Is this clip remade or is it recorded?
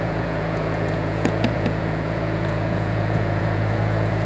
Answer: remade